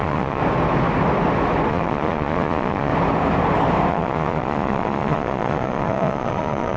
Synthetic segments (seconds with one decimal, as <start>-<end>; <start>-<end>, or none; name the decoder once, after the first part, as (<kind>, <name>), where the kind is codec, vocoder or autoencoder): 0.0-0.4 (vocoder, Vocos); 1.7-2.9; 3.9-6.8